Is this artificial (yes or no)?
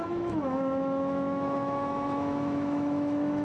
yes